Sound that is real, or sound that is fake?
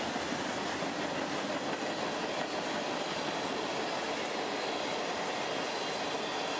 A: real